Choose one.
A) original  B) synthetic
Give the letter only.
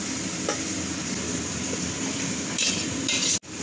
A